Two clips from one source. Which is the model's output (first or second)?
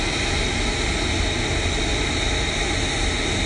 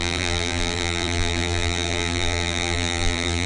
second